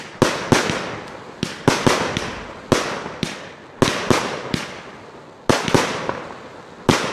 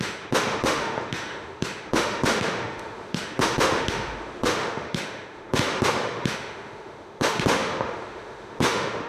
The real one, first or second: first